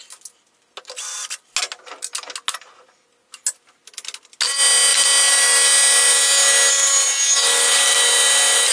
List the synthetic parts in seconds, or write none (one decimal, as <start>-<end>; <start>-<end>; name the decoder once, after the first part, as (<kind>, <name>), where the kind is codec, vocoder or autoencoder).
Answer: none